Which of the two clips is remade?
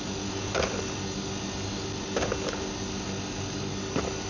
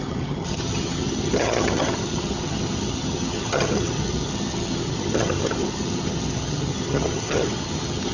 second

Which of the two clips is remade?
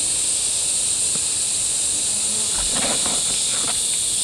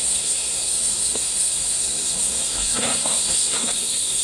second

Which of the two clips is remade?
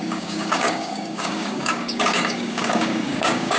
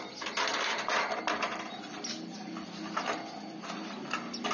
first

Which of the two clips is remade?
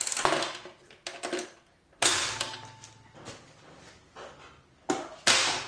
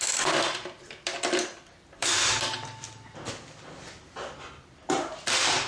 second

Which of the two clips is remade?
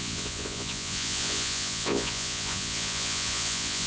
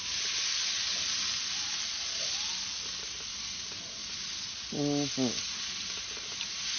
first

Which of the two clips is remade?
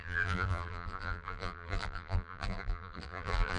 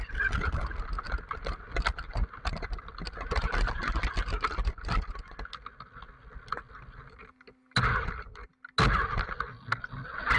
first